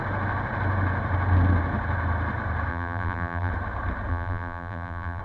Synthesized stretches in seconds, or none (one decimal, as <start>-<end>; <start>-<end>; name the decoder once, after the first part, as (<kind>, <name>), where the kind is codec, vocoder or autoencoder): 2.7-3.5 (vocoder, BigVGAN v2); 4.1-5.2